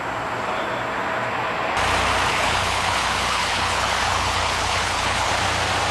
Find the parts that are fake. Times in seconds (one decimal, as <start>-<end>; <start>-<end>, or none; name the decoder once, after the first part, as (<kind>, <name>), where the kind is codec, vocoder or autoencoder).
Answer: 2.3-5.3 (codec, HILCodec)